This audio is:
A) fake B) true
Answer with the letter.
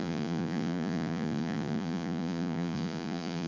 A